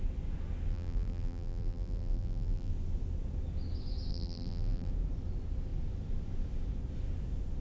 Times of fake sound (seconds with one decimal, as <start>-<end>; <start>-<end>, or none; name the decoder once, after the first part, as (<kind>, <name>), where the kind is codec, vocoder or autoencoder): 0.7-2.7 (vocoder, BigVGAN v2); 4.1-4.9